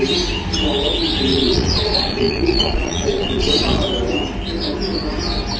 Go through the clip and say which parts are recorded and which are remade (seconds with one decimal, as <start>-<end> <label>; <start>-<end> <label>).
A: 0.0-1.3 recorded; 1.3-3.8 remade; 3.8-5.6 recorded